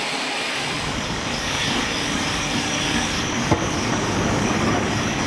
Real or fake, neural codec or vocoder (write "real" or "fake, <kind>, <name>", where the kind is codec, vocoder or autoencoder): fake, codec, DAC